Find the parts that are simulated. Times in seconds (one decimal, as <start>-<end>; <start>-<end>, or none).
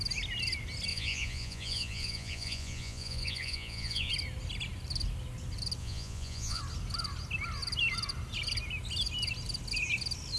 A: 0.9-4.1; 5.8-6.6